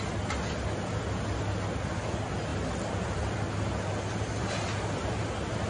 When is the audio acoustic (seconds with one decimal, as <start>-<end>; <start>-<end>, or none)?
0.0-5.7